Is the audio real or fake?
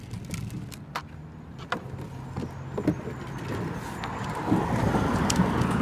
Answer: real